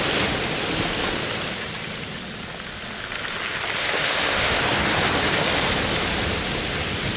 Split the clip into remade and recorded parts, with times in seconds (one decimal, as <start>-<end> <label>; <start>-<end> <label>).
0.0-3.8 recorded; 3.8-4.6 remade; 4.6-7.2 recorded